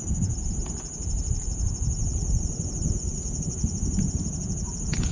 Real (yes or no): no